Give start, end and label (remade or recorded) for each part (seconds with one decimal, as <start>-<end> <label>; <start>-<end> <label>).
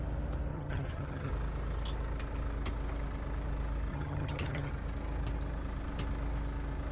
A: 0.0-0.5 recorded; 0.5-1.3 remade; 1.3-3.9 recorded; 3.9-4.7 remade; 4.7-6.9 recorded